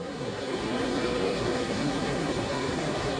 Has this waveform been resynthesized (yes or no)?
yes